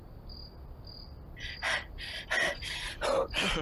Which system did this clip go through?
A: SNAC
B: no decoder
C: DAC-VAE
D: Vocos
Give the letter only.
B